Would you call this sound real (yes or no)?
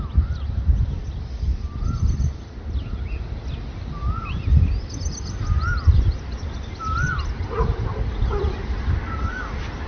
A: yes